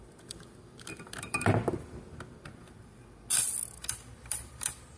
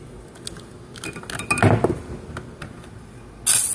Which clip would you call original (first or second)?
second